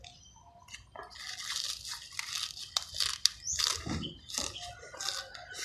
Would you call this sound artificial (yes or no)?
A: no